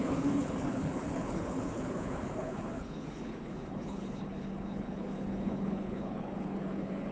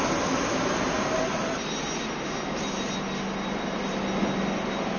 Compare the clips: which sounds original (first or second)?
second